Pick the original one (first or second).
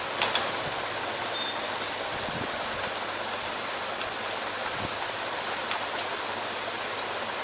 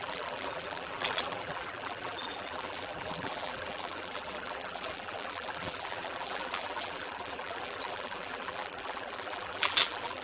first